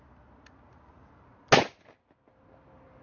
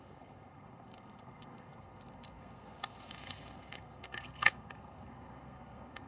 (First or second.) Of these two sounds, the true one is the first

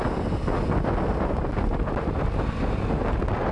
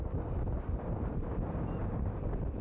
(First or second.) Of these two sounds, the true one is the first